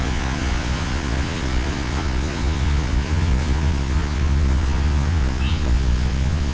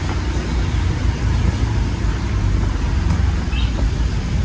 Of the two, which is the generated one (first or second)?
first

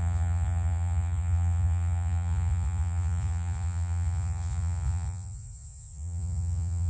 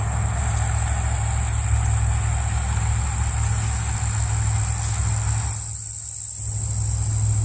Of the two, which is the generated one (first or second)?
first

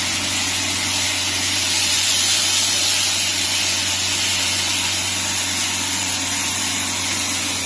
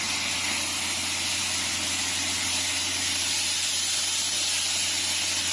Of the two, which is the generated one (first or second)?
first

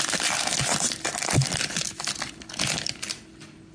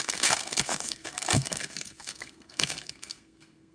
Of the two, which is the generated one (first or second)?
second